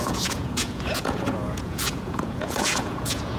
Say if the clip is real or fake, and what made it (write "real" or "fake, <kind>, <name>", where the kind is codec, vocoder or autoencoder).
fake, vocoder, Vocos